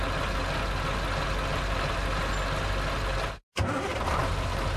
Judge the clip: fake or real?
real